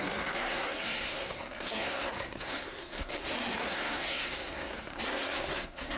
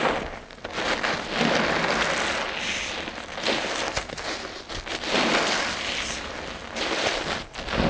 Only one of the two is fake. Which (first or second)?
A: first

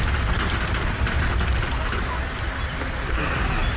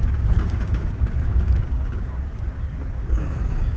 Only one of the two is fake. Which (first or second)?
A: second